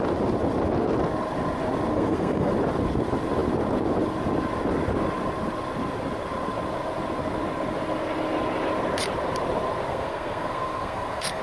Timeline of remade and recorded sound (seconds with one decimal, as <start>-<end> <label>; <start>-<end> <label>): 0.0-1.9 recorded; 1.9-2.5 remade; 2.5-9.9 recorded; 9.9-11.4 remade